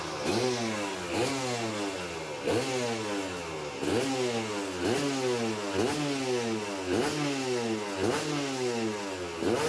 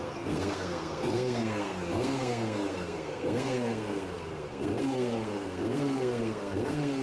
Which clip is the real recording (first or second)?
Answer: first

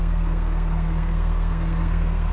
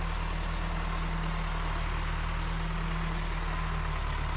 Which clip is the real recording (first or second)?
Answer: second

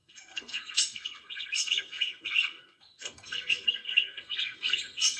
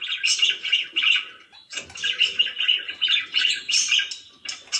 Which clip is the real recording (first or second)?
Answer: second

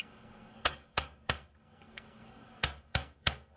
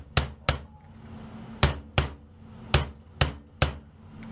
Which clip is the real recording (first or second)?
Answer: second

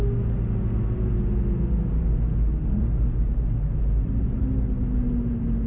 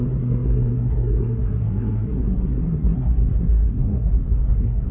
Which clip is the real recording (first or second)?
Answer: first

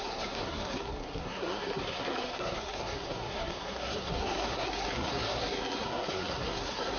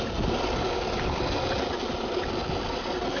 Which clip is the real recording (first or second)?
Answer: second